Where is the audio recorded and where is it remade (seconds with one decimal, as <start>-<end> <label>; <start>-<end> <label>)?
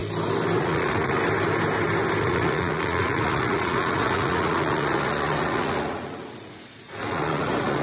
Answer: 0.0-0.6 recorded; 0.6-1.2 remade; 1.2-2.2 recorded; 2.2-7.8 remade